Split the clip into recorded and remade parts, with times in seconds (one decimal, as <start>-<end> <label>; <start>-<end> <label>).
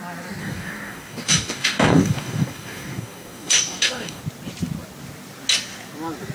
0.0-0.4 recorded; 0.4-4.2 remade; 4.2-6.3 recorded